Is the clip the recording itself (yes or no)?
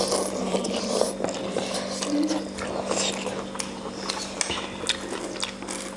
yes